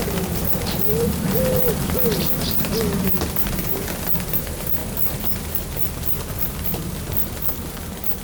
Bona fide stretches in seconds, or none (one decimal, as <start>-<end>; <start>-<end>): 0.0-8.2